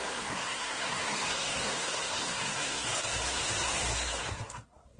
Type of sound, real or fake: fake